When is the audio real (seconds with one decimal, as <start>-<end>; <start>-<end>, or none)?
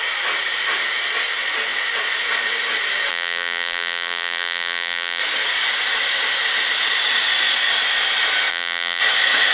0.0-3.1; 5.2-8.5; 9.0-9.5